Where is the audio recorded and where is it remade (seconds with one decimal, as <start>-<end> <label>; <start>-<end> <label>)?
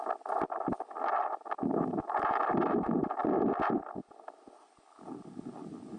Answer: 0.0-6.0 recorded